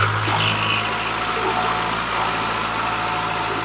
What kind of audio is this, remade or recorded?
recorded